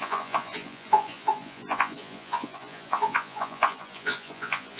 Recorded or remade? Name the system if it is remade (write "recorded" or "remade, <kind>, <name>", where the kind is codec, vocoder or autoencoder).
remade, vocoder, Vocos